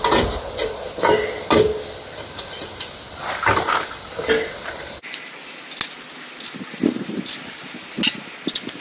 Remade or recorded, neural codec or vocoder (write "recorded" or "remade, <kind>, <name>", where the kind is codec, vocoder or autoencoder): recorded